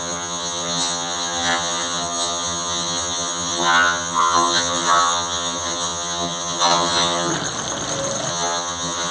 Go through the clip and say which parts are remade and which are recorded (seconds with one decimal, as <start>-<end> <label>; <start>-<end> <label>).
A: 0.0-7.3 remade; 7.3-8.3 recorded; 8.3-9.1 remade